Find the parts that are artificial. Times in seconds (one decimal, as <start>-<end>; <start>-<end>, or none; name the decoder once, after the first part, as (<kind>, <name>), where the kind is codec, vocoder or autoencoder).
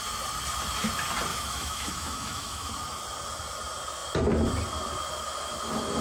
1.3-2.7 (autoencoder, DAC-VAE)